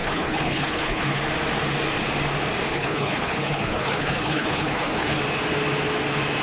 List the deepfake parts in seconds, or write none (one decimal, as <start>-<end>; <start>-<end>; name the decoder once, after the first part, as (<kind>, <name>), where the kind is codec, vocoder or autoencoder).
0.0-1.2 (codec, HILCodec); 2.7-5.2